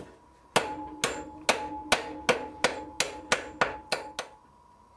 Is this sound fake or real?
real